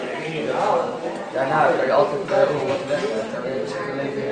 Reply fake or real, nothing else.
real